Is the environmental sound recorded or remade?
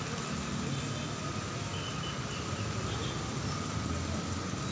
recorded